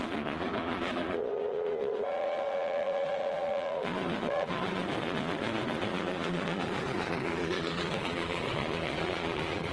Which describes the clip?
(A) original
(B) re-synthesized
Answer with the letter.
B